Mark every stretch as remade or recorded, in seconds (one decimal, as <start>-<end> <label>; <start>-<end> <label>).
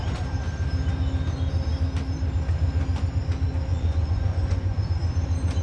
0.0-3.7 recorded; 3.7-4.9 remade; 4.9-5.6 recorded